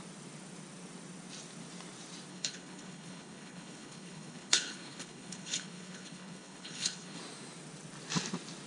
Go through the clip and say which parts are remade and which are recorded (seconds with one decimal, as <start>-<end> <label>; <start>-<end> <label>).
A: 0.0-2.3 recorded; 2.3-7.2 remade; 7.2-8.7 recorded

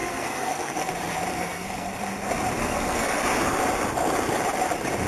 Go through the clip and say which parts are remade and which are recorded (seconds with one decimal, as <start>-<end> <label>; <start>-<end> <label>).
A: 0.0-0.9 remade; 0.9-1.3 recorded; 1.3-2.0 remade; 2.0-2.6 recorded; 2.6-3.2 remade; 3.2-5.1 recorded

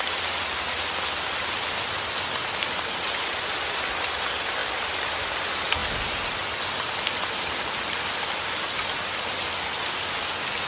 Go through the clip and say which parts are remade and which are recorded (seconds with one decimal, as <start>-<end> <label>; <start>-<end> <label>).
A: 0.0-10.7 recorded

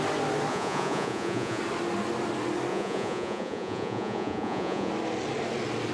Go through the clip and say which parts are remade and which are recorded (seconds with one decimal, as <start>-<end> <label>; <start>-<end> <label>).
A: 0.0-0.5 recorded; 0.5-1.6 remade; 1.6-2.7 recorded; 2.7-4.9 remade; 4.9-5.9 recorded

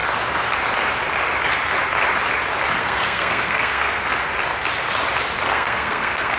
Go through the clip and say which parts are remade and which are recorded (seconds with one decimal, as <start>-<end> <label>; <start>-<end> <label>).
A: 0.0-2.8 recorded; 2.8-4.1 remade; 4.1-5.5 recorded; 5.5-6.4 remade

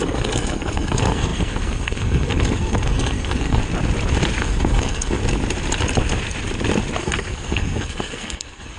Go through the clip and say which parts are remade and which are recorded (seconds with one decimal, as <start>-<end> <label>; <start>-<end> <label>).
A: 0.0-3.6 remade; 3.6-4.4 recorded; 4.4-5.2 remade; 5.2-7.0 recorded; 7.0-8.8 remade

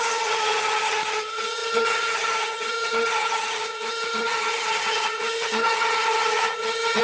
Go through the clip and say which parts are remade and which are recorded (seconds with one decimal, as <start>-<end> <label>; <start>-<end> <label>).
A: 0.0-7.0 remade